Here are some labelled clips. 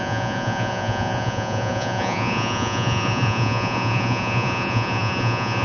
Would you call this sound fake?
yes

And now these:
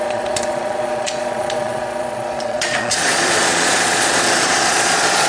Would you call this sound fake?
yes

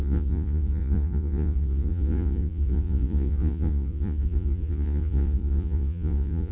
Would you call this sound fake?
yes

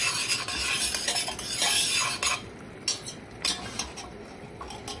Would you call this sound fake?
no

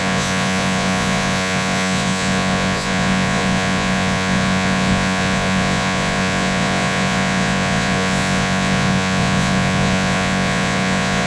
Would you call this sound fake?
yes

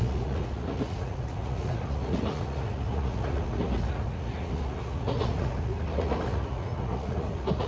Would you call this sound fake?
yes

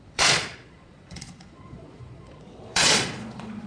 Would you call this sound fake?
yes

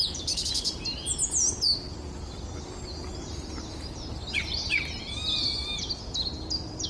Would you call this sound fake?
no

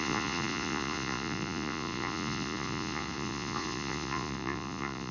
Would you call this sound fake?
yes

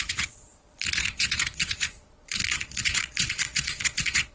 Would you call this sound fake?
yes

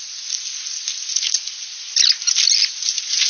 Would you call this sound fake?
no